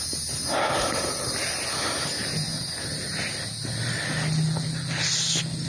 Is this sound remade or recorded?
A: recorded